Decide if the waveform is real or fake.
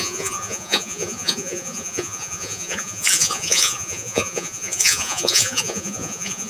fake